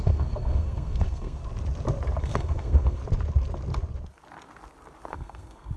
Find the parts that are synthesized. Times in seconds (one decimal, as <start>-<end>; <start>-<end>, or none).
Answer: 0.0-1.4; 2.2-3.0; 5.1-5.8

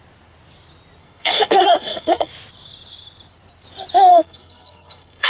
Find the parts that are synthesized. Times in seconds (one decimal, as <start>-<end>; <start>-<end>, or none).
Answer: 1.0-2.3; 4.1-5.3

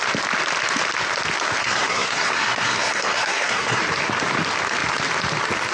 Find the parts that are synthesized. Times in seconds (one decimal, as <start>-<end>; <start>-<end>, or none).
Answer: 1.6-3.8

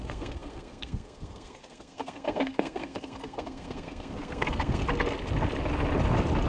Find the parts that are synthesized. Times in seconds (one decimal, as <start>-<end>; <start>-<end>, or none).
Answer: 0.0-4.8

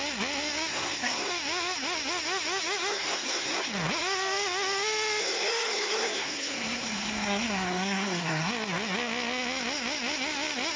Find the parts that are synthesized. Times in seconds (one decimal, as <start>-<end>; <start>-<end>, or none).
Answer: 0.7-1.3; 2.9-3.7; 5.2-8.5